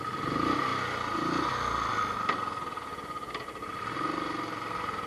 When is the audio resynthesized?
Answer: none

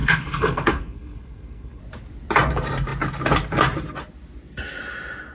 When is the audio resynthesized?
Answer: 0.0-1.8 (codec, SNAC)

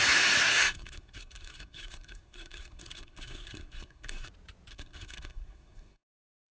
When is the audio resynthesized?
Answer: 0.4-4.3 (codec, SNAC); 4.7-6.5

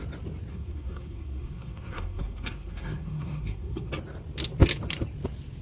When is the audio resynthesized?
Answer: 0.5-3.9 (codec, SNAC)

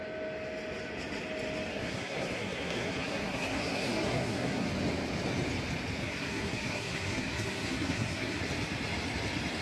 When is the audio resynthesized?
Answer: 1.7-4.7 (codec, SNAC); 6.0-8.4